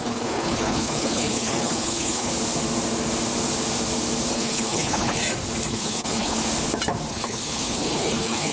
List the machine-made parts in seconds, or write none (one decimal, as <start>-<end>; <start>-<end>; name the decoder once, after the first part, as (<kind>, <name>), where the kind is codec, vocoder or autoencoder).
0.0-2.3 (codec, HILCodec); 4.3-5.2; 5.7-6.4; 7.1-8.5

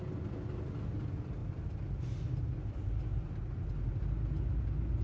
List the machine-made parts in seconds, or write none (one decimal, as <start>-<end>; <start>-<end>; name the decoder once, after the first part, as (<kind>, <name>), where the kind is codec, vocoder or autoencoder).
none

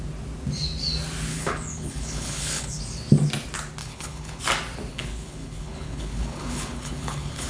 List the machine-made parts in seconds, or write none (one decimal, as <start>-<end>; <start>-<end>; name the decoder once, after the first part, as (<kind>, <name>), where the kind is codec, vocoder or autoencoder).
1.3-2.8 (codec, HILCodec); 3.8-4.4; 4.9-7.5

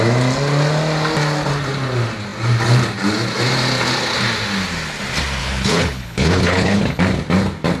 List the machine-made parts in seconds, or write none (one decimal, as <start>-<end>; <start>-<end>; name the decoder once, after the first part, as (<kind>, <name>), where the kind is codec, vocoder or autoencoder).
5.4-7.0 (codec, HILCodec)

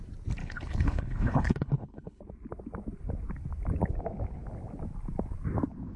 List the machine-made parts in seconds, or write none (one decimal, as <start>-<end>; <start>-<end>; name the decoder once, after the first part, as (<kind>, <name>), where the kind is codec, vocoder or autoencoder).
0.4-2.2 (codec, HILCodec)

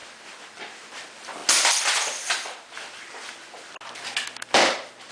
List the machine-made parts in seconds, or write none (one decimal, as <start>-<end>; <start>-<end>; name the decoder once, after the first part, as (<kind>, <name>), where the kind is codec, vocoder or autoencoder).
none

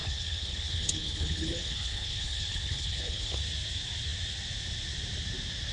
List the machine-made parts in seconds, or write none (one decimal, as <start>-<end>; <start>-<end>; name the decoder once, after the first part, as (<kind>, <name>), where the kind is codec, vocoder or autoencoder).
0.0-3.4 (codec, HILCodec)

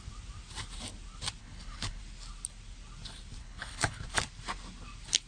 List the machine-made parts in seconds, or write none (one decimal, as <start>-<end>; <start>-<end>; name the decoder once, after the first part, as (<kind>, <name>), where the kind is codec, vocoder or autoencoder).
1.4-2.0 (codec, HILCodec); 3.4-4.0